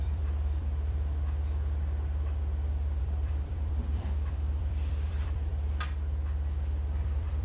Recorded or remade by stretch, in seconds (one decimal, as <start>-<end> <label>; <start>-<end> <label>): 0.0-1.1 remade; 1.1-3.0 recorded; 3.0-5.5 remade; 5.5-7.0 recorded; 7.0-7.4 remade